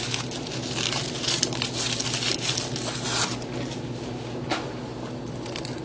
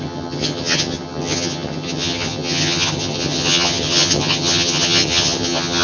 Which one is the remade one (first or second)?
second